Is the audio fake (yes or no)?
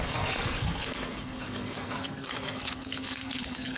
yes